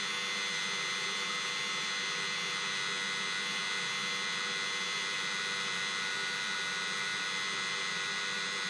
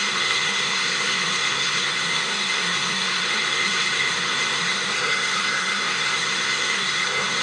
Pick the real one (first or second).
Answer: first